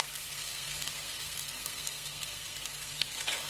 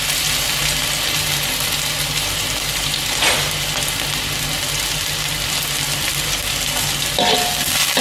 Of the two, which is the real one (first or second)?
second